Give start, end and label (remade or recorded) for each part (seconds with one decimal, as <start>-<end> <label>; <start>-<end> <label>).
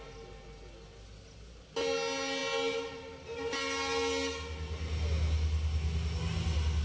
0.0-6.8 recorded